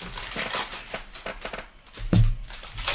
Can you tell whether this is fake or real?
real